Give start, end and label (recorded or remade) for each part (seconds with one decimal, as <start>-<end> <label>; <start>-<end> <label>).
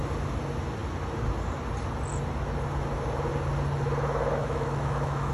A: 0.0-4.4 recorded; 4.4-5.3 remade